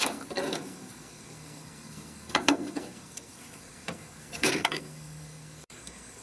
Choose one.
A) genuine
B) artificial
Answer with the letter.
B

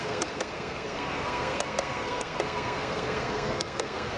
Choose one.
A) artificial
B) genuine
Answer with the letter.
A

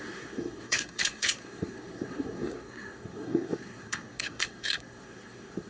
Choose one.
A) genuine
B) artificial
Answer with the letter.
B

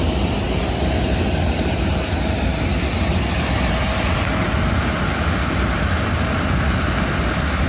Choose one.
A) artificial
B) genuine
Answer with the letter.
B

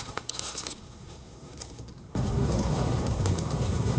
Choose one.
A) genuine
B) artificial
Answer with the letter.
B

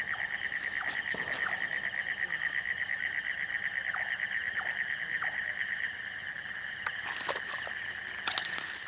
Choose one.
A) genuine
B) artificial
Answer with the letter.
A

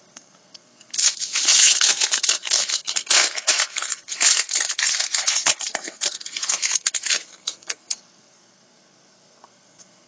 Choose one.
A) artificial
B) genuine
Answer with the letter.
A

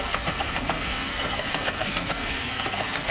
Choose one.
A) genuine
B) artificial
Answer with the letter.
B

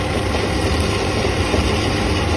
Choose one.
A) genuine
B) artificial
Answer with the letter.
A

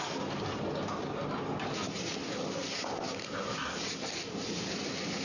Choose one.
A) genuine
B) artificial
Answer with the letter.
A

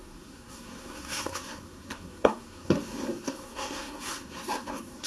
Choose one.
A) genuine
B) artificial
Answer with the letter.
B